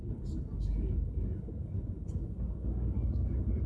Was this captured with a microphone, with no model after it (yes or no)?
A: no